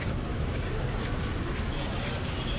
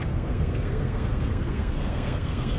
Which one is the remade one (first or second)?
second